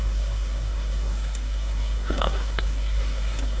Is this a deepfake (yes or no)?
yes